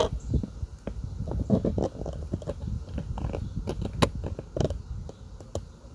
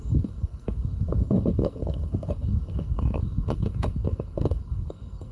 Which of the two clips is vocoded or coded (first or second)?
second